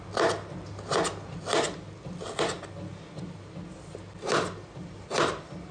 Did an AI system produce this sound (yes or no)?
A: no